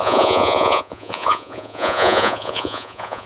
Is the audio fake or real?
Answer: fake